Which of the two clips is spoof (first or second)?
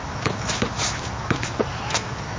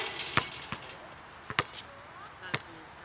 first